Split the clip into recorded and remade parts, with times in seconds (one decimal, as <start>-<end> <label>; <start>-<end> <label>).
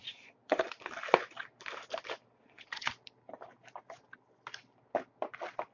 0.0-0.8 remade; 0.8-2.3 recorded; 2.3-2.9 remade; 2.9-5.7 recorded